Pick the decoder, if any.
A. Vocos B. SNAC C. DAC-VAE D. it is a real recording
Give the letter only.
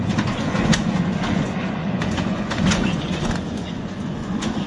A